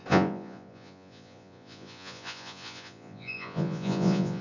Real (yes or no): no